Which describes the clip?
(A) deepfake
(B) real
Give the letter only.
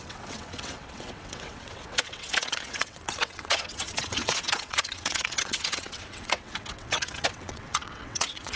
A